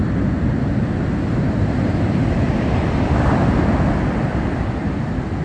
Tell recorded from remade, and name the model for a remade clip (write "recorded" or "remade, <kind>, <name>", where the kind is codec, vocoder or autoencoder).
recorded